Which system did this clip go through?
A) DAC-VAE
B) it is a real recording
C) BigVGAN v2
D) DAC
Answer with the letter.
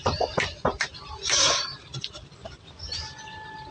C